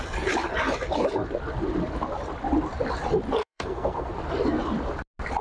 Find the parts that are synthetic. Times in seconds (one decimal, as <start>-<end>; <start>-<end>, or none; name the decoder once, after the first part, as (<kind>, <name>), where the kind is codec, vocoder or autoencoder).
3.4-4.1 (codec, SNAC)